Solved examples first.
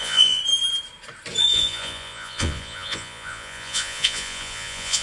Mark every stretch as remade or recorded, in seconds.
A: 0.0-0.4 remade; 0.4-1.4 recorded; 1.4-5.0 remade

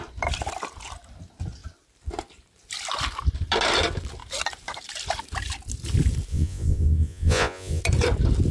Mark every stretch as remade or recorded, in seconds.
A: 0.0-6.3 recorded; 6.3-7.8 remade; 7.8-8.5 recorded

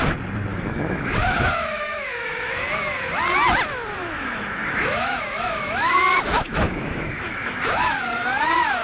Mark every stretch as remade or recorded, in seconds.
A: 0.0-0.5 recorded; 0.5-2.5 remade; 2.5-4.0 recorded; 4.0-8.0 remade; 8.0-8.8 recorded